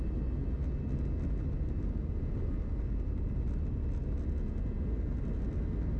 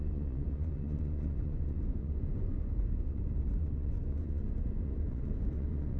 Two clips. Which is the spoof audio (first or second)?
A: second